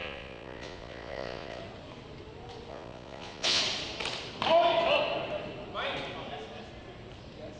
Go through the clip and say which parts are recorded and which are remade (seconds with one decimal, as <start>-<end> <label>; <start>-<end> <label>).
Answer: 0.0-1.6 remade; 1.6-2.7 recorded; 2.7-3.6 remade; 3.6-7.6 recorded